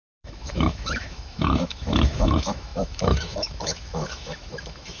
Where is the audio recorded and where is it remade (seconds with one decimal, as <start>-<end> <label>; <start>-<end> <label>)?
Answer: 0.0-5.0 remade